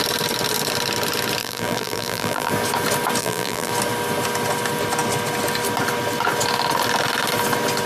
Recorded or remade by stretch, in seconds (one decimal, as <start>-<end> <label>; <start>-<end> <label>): 0.0-1.4 recorded; 1.4-2.5 remade; 2.5-3.2 recorded; 3.2-3.7 remade; 3.7-7.9 recorded